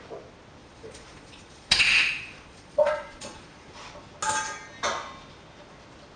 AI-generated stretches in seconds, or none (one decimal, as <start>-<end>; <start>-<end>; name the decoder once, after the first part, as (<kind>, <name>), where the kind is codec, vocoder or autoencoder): 0.6-3.8 (vocoder, Vocos)